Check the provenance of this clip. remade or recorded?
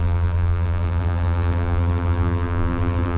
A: remade